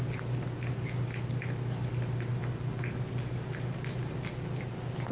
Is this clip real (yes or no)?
yes